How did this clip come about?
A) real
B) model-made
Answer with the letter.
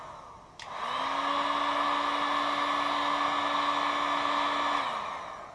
A